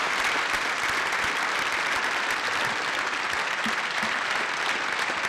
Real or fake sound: real